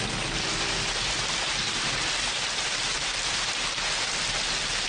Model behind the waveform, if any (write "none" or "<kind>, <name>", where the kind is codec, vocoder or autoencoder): none